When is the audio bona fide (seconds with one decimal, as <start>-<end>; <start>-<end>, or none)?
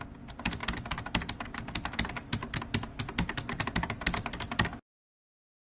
0.0-5.6